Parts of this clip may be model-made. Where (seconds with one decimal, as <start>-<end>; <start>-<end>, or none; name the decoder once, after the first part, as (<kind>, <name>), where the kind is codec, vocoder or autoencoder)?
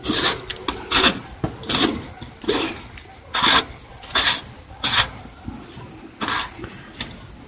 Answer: none